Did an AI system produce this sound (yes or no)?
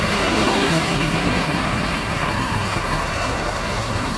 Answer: yes